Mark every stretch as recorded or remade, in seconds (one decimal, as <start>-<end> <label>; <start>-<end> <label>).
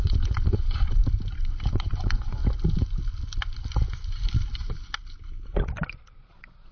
0.0-1.0 remade; 1.0-1.7 recorded; 1.7-2.4 remade; 2.4-6.3 recorded; 6.3-6.7 remade